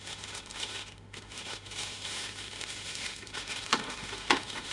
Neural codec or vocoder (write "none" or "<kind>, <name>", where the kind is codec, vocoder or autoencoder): autoencoder, DAC-VAE